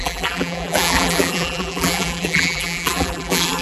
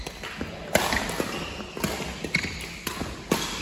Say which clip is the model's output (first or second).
first